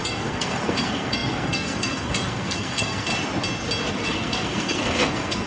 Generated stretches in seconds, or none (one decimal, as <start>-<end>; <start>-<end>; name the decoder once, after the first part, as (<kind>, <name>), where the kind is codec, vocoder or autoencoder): 0.0-3.1 (codec, SNAC); 3.9-5.5